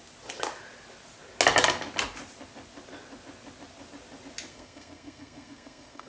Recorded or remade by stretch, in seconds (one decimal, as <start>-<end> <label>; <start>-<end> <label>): 0.0-4.5 recorded; 4.5-6.1 remade